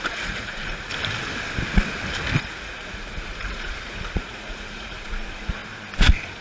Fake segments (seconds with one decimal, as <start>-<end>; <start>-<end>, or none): 0.0-0.9; 2.4-5.6